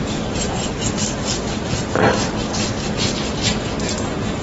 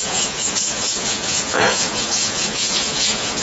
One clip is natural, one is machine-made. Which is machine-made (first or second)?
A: second